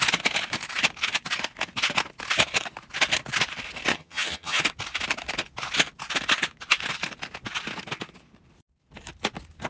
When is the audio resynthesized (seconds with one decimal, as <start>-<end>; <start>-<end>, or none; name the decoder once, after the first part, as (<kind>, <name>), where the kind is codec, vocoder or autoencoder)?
3.9-4.6 (vocoder, HiFi-GAN)